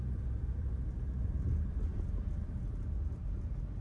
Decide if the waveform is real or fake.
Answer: real